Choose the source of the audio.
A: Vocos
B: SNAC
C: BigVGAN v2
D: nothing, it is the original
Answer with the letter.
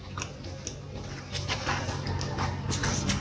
D